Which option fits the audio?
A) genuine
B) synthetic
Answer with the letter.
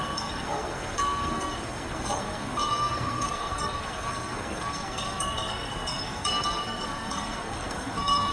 B